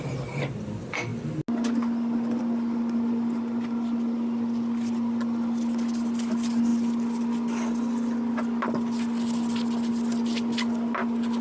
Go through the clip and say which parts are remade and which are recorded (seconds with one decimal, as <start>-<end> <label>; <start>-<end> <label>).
0.0-11.4 recorded